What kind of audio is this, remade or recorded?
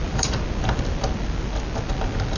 recorded